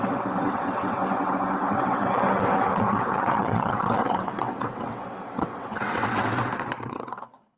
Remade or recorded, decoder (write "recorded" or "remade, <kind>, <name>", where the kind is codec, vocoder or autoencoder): remade, vocoder, WaveNeXt